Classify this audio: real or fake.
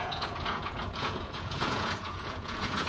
fake